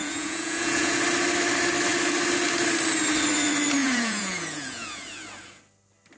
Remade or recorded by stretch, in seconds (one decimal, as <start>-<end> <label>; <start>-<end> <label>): 0.0-1.0 remade; 1.0-3.8 recorded; 3.8-5.6 remade; 5.6-6.2 recorded